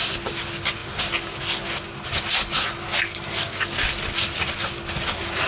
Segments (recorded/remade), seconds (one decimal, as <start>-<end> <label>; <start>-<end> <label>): 0.0-5.5 recorded